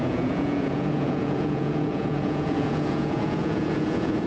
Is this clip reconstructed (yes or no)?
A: yes